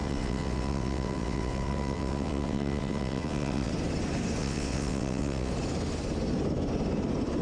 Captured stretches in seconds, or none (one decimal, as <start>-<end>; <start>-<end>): 3.7-4.4; 5.5-7.4